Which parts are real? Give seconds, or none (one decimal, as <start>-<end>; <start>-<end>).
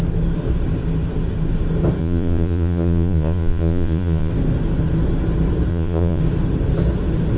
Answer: 0.0-2.0; 4.3-5.7; 6.2-7.4